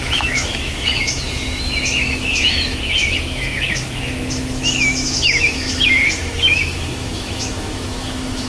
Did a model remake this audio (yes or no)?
yes